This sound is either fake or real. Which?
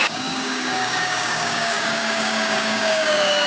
fake